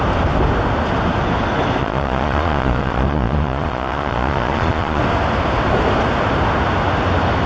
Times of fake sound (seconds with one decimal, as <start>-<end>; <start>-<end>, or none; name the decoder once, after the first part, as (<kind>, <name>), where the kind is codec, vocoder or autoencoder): 1.8-5.0 (vocoder, Vocos)